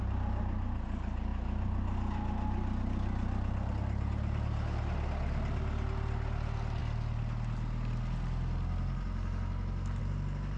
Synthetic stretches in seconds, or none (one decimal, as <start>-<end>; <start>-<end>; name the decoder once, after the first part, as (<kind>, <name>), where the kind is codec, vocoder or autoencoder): none